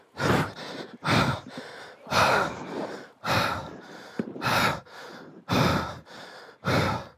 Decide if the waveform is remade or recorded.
recorded